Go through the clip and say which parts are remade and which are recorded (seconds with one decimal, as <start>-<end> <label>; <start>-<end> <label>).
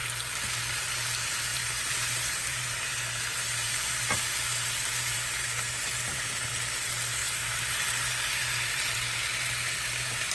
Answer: 0.0-1.5 recorded; 1.5-6.5 remade; 6.5-7.2 recorded; 7.2-10.3 remade